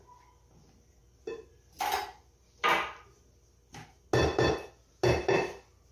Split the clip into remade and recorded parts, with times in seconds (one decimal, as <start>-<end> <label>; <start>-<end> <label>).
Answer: 0.0-5.9 recorded